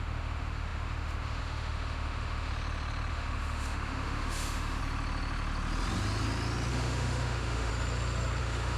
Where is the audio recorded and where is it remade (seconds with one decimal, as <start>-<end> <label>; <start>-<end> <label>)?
0.0-2.5 remade; 2.5-3.1 recorded; 3.1-4.8 remade; 4.8-6.7 recorded; 6.7-7.7 remade; 7.7-8.4 recorded; 8.4-8.8 remade